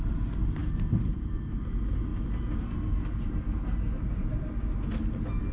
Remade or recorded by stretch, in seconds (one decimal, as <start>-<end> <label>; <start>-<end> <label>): 0.0-5.5 recorded